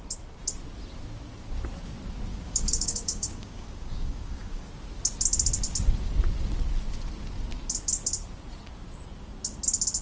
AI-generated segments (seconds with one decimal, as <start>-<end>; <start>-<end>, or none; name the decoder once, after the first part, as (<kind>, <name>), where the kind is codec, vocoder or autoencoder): 2.3-4.7 (codec, DAC)